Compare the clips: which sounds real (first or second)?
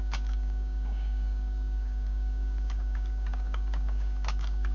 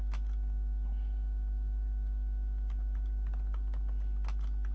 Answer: second